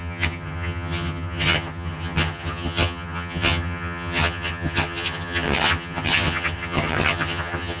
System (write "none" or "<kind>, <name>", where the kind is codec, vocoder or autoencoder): vocoder, HiFi-GAN